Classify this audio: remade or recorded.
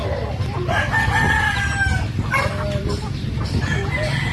recorded